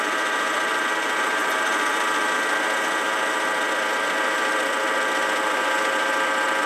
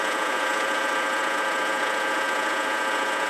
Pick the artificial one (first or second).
second